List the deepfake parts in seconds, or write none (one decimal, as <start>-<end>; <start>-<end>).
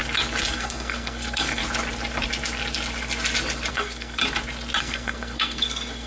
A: 0.5-1.6; 3.7-4.2; 4.8-6.1